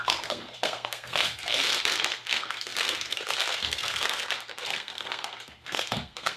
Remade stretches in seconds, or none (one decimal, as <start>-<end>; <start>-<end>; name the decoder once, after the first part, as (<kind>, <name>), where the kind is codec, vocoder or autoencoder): 0.0-6.4 (codec, SNAC)